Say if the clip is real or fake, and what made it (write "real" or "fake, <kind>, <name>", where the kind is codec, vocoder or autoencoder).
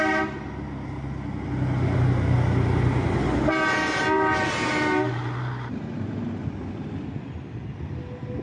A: real